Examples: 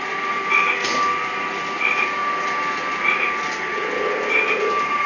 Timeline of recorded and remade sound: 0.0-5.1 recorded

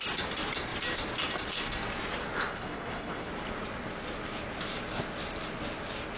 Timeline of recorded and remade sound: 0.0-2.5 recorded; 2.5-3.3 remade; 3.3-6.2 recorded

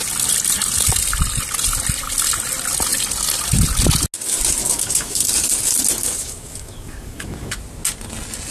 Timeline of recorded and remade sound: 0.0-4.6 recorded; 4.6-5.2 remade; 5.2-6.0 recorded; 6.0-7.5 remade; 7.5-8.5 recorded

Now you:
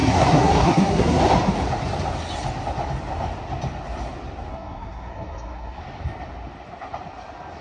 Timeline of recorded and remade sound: 0.0-1.2 remade; 1.2-4.5 recorded; 4.5-5.8 remade; 5.8-7.6 recorded

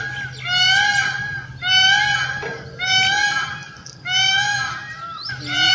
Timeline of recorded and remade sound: 0.0-0.9 recorded; 0.9-1.5 remade; 1.5-5.7 recorded

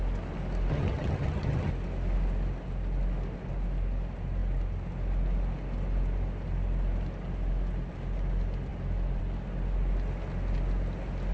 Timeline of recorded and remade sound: 0.0-0.7 recorded; 0.7-1.7 remade; 1.7-11.3 recorded

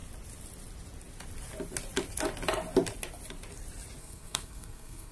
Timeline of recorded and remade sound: 0.0-4.0 recorded; 4.0-5.1 remade

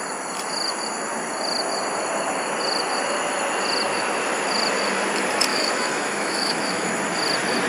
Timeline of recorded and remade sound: 0.0-5.5 recorded; 5.5-6.9 remade; 6.9-7.7 recorded